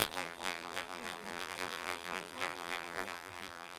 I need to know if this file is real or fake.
fake